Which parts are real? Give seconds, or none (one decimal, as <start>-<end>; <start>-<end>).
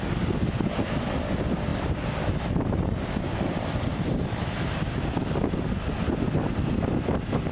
0.0-7.5